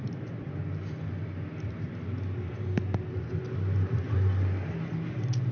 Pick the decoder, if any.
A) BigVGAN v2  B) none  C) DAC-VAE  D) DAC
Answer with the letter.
B